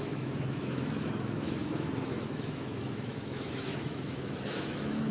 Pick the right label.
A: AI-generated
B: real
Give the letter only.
A